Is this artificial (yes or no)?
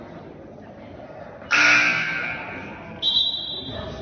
no